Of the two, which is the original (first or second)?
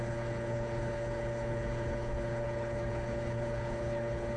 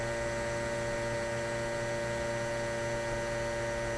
second